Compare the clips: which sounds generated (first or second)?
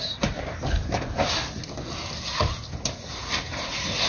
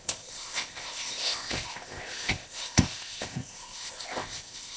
second